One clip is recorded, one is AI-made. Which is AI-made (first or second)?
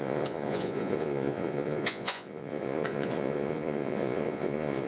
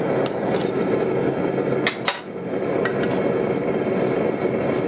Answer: first